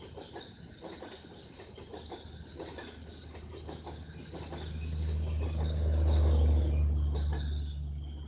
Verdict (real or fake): real